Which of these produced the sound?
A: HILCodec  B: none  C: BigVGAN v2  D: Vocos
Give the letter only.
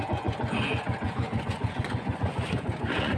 D